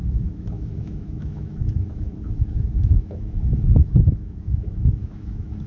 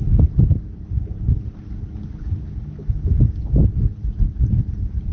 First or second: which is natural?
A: second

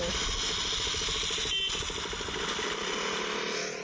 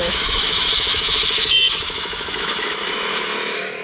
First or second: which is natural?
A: first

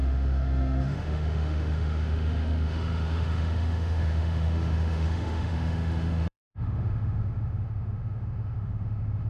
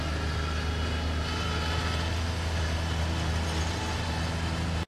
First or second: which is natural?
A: second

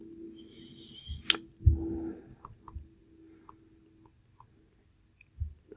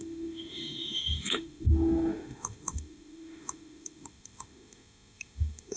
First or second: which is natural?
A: first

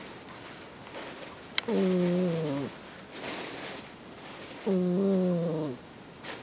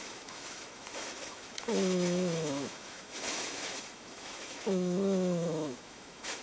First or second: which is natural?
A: first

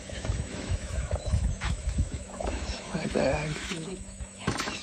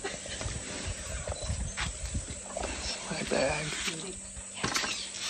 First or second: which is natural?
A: second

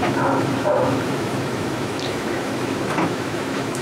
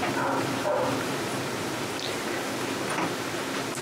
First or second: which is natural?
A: second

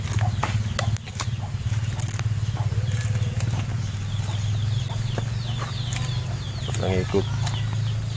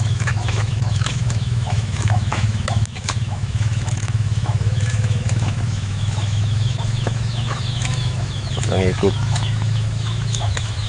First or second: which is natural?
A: first